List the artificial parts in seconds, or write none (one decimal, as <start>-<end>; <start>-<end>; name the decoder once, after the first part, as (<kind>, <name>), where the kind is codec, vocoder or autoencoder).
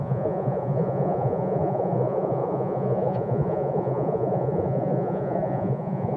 0.0-6.2 (vocoder, Vocos)